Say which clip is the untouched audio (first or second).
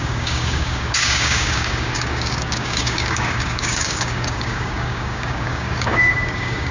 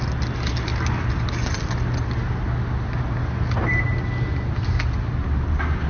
second